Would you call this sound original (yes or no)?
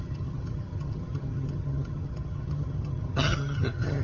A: no